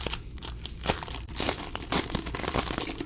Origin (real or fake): real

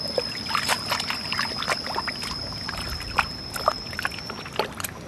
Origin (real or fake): real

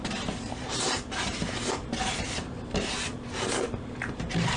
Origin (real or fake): fake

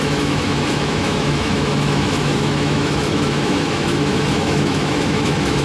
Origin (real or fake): fake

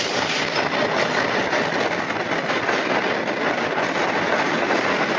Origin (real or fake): fake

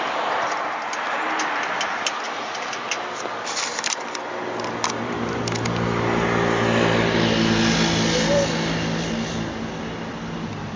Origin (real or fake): real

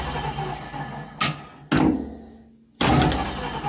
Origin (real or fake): real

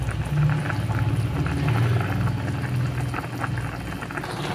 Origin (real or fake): real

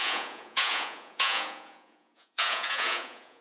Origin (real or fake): fake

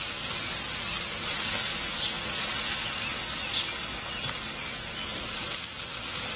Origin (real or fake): real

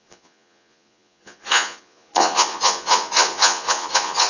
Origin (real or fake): fake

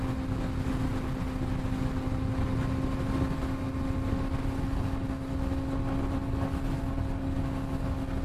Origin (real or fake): real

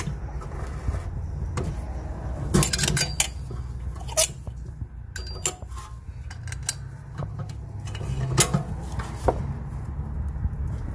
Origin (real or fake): real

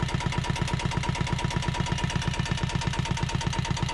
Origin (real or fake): real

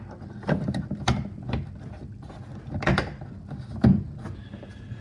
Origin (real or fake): real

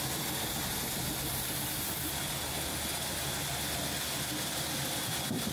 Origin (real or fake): real